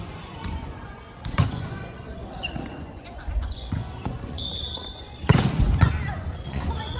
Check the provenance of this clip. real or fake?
fake